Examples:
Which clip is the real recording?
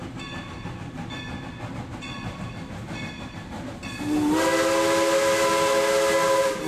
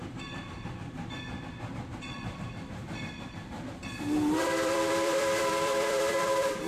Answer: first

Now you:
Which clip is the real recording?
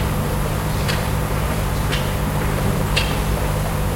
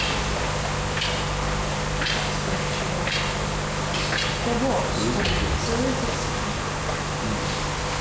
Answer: second